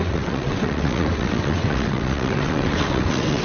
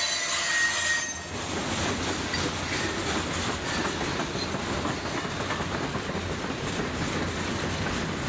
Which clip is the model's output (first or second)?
first